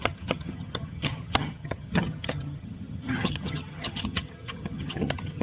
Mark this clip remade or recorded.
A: remade